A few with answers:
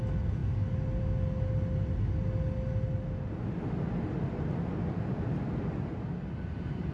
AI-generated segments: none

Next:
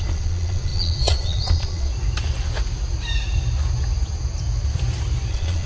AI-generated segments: 0.0-1.9 (vocoder, Vocos); 5.3-5.7

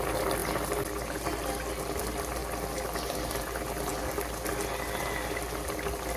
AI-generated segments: none

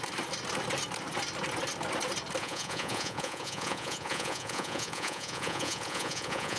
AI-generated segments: 2.4-6.6 (vocoder, Vocos)

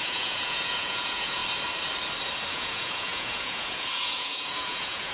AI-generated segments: 0.0-1.4 (vocoder, Vocos); 2.5-5.1